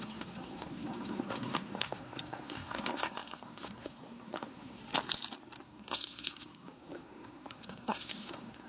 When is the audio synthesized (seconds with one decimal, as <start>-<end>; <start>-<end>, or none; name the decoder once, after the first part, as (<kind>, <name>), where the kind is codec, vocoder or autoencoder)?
0.0-4.8 (codec, SNAC); 5.6-8.7